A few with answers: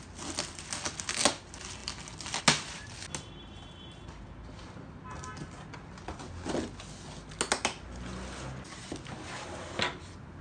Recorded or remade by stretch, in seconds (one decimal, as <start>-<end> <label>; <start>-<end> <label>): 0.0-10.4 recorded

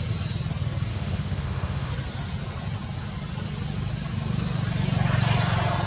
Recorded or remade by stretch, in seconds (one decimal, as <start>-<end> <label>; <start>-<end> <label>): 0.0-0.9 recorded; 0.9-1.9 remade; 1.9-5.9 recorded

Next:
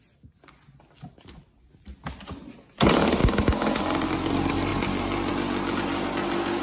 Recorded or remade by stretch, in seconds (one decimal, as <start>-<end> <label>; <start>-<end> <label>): 0.0-3.2 recorded; 3.2-3.8 remade; 3.8-6.6 recorded